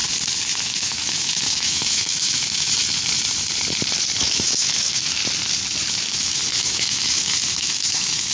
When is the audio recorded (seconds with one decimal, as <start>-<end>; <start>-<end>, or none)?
0.0-0.6; 2.8-4.2; 5.2-5.9